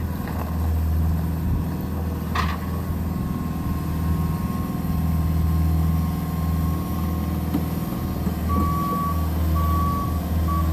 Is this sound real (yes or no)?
yes